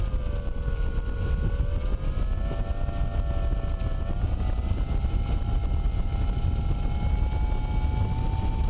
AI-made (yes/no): no